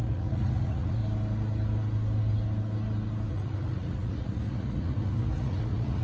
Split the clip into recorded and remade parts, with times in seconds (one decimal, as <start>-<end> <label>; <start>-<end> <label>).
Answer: 0.0-1.0 remade; 1.0-3.3 recorded; 3.3-6.0 remade